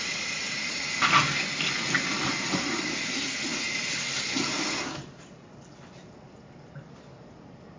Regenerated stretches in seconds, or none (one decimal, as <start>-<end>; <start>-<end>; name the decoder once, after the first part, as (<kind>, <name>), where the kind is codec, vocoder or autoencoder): none